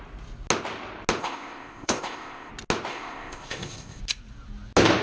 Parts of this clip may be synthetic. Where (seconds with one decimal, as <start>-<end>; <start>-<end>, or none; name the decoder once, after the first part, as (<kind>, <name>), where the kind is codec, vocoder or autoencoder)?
1.2-2.5 (codec, ZipCodec); 2.9-4.0